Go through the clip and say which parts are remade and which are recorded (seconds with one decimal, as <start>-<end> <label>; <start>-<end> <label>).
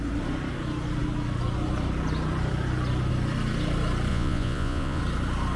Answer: 0.0-4.1 recorded; 4.1-5.0 remade; 5.0-5.6 recorded